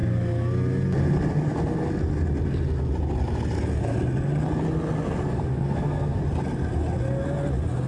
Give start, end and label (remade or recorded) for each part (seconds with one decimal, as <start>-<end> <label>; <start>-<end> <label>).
0.0-5.5 recorded; 5.5-6.2 remade; 6.2-7.9 recorded